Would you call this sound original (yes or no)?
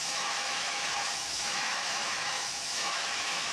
no